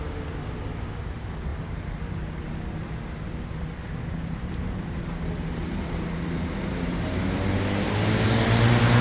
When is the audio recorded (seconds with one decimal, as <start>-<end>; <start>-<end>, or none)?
0.0-9.0